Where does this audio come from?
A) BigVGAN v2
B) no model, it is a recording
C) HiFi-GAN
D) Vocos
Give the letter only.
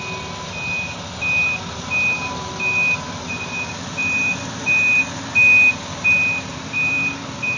B